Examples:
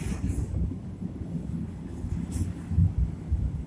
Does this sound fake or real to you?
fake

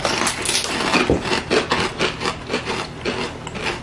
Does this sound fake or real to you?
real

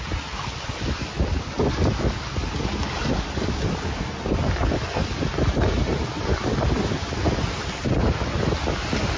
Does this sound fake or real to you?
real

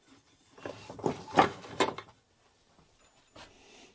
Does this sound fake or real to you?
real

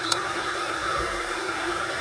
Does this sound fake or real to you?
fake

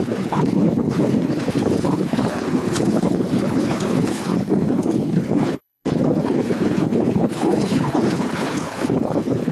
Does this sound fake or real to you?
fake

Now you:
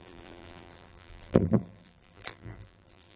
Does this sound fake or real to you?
fake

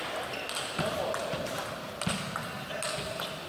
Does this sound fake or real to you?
real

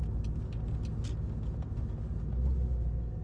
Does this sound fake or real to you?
real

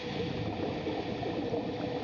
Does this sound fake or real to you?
real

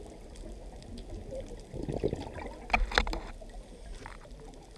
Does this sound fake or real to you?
real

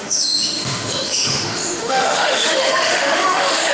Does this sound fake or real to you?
fake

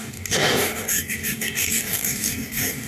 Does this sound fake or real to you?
fake